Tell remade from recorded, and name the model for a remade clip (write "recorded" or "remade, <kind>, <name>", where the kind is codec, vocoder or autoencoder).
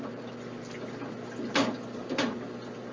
recorded